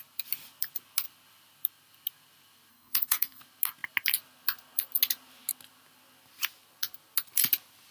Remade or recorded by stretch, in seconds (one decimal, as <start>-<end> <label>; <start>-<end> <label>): 0.0-2.7 recorded; 2.7-3.4 remade; 3.4-7.9 recorded